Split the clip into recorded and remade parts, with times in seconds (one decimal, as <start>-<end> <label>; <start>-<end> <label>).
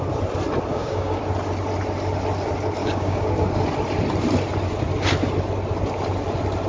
0.0-0.7 recorded; 0.7-1.2 remade; 1.2-2.8 recorded; 2.8-3.3 remade; 3.3-6.7 recorded